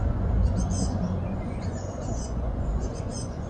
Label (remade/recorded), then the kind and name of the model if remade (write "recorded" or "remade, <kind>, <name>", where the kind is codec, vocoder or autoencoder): remade, vocoder, Vocos